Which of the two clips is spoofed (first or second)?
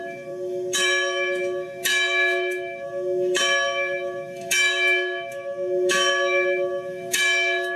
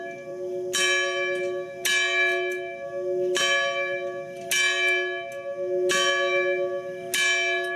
first